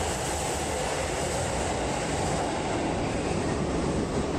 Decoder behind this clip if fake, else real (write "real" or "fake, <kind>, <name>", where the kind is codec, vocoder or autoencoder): real